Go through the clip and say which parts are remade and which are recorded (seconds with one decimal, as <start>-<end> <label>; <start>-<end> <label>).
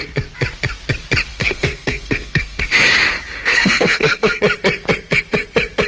0.0-1.3 recorded; 1.3-2.6 remade; 2.6-3.5 recorded; 3.5-4.4 remade; 4.4-5.9 recorded